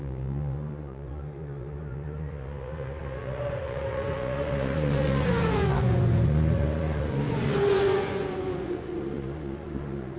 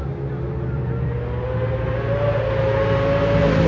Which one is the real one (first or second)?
second